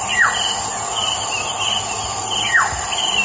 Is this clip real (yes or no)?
yes